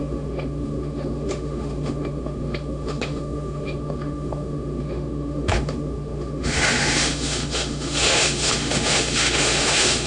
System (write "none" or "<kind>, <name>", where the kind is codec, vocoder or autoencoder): autoencoder, DAC-VAE